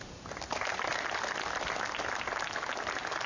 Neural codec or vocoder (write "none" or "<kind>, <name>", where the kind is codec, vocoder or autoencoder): none